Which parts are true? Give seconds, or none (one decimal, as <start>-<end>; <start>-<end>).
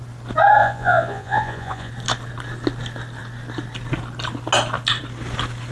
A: 0.0-0.6; 1.9-5.7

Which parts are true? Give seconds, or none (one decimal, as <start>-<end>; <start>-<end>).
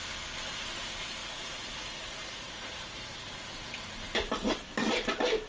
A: 0.0-1.2; 3.3-5.5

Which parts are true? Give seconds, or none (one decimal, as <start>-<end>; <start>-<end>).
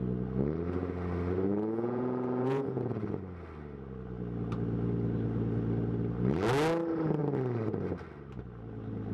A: 0.0-1.5; 2.9-9.1